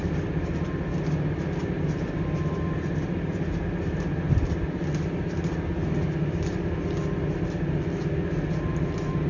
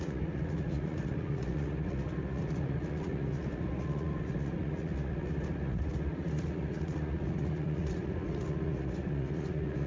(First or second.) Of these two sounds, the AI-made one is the second